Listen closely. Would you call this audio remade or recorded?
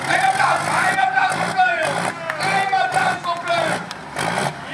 recorded